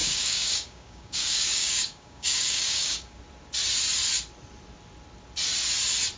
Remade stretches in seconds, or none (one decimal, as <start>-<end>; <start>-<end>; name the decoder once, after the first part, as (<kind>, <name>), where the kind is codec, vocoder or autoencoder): 0.0-3.2 (codec, DAC)